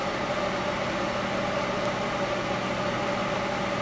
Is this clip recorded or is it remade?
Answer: recorded